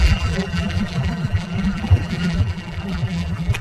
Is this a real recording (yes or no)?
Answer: no